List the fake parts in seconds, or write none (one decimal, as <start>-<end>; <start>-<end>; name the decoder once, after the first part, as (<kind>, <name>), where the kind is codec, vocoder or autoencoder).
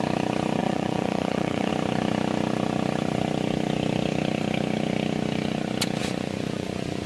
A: 0.6-1.7 (vocoder, Vocos); 6.0-7.1